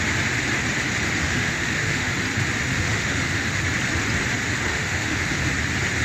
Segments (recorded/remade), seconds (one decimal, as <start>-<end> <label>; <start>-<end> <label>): 0.0-1.2 recorded; 1.2-2.1 remade; 2.1-2.7 recorded; 2.7-3.6 remade; 3.6-4.7 recorded; 4.7-5.3 remade; 5.3-6.0 recorded